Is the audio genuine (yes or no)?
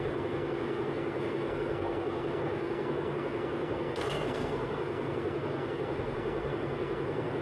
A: no